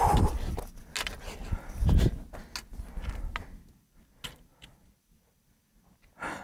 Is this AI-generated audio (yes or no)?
no